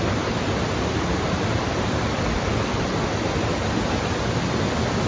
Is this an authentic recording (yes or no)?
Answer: yes